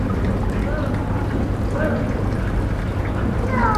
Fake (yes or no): no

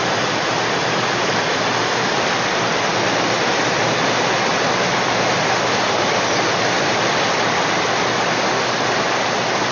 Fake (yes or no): no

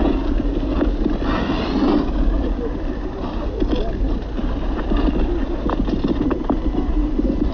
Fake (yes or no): no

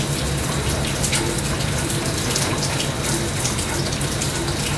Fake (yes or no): no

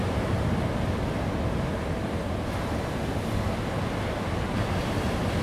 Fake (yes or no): no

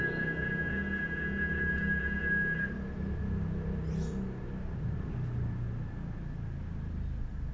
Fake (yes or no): no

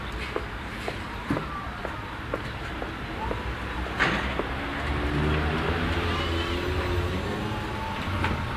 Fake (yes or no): no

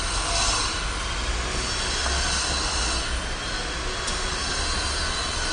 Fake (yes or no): no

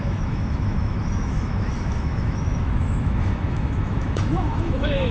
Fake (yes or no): yes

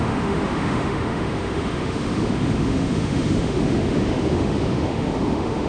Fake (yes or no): yes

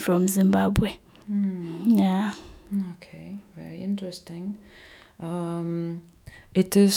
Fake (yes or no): yes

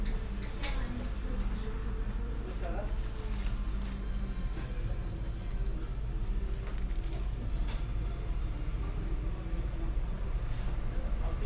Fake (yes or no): no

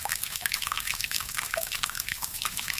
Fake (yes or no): yes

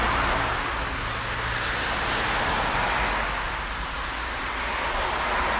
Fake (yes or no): no